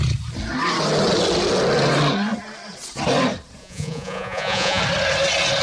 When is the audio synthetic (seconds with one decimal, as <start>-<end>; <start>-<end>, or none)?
3.6-4.8